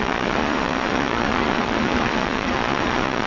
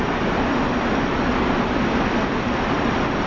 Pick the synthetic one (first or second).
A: first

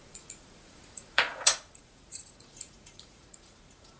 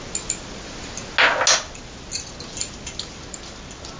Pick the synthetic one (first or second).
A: first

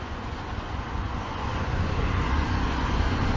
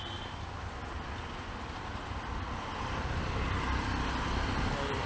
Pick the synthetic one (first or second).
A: first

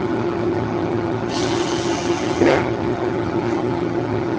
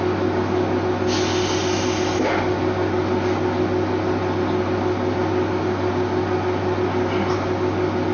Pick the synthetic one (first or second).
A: first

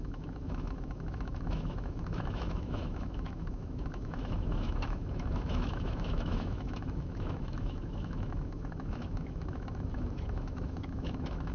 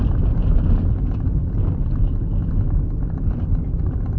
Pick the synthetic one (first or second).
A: first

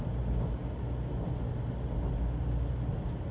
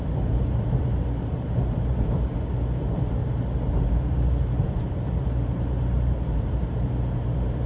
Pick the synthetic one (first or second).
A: second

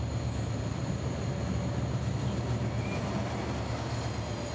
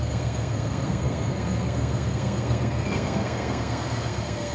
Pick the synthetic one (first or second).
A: second